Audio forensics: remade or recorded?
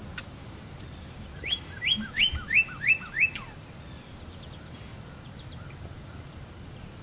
remade